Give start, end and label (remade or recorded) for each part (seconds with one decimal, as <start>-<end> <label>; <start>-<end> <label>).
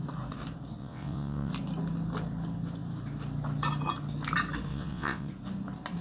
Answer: 0.0-0.8 recorded; 0.8-1.5 remade; 1.5-4.7 recorded; 4.7-5.3 remade; 5.3-6.0 recorded